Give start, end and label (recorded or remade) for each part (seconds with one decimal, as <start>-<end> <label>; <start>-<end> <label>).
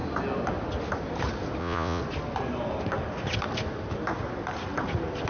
0.0-1.6 recorded; 1.6-2.0 remade; 2.0-5.3 recorded